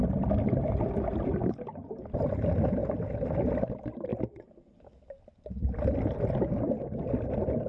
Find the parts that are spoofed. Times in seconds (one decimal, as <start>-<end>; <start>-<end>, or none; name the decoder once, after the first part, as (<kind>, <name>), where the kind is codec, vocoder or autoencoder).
4.1-5.2 (vocoder, BigVGAN v2)